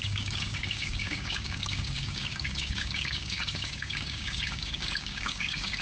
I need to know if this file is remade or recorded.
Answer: remade